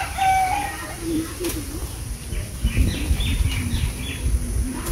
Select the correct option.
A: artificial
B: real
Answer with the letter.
A